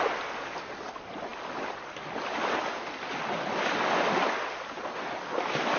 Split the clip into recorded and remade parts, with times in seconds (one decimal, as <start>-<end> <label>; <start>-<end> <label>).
0.0-5.8 recorded